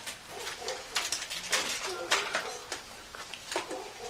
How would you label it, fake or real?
real